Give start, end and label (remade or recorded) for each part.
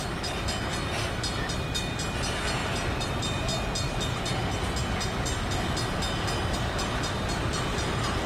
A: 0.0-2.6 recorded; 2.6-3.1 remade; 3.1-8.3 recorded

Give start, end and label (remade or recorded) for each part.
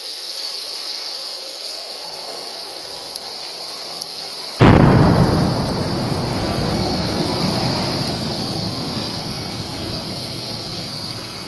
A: 0.0-3.3 remade; 3.3-3.9 recorded; 3.9-4.3 remade; 4.3-6.4 recorded; 6.4-7.4 remade; 7.4-8.1 recorded; 8.1-11.5 remade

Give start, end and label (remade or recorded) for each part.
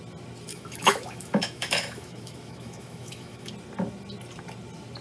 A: 0.0-0.5 recorded; 0.5-3.5 remade; 3.5-5.0 recorded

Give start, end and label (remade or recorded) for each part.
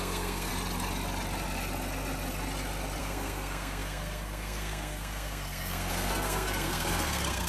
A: 0.0-0.5 remade; 0.5-3.0 recorded; 3.0-7.5 remade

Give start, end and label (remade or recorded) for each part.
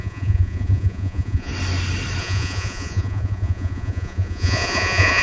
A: 0.0-1.5 remade; 1.5-2.2 recorded; 2.2-5.2 remade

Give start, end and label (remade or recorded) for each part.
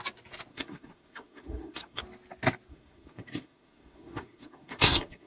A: 0.0-0.5 recorded; 0.5-2.0 remade; 2.0-2.7 recorded; 2.7-5.3 remade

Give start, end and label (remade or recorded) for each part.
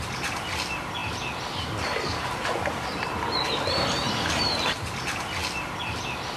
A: 0.0-6.4 recorded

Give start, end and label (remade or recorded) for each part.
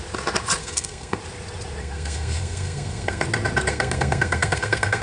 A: 0.0-0.6 recorded; 0.6-1.2 remade; 1.2-1.8 recorded; 1.8-3.2 remade; 3.2-3.7 recorded; 3.7-5.0 remade